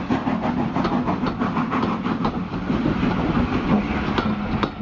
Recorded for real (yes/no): yes